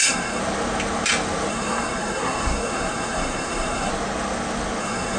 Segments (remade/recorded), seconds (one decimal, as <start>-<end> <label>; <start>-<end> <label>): 0.0-0.4 remade; 0.4-1.5 recorded; 1.5-3.9 remade; 3.9-4.8 recorded; 4.8-5.2 remade